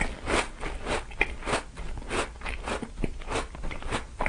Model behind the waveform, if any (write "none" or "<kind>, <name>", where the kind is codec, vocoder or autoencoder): none